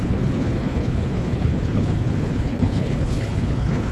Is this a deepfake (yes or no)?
yes